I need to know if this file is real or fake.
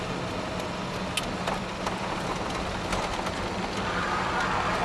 real